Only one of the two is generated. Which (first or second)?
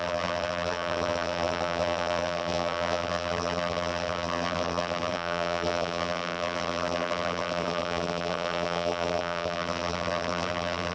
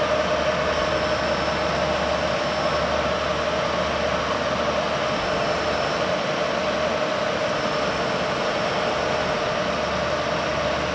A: first